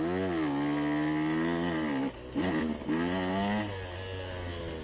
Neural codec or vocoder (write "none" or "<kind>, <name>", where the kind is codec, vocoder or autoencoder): none